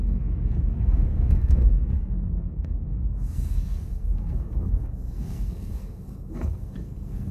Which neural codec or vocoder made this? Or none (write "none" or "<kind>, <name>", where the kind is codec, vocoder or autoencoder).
codec, SNAC